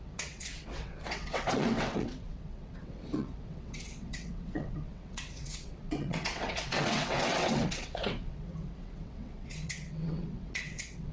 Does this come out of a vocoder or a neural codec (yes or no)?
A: yes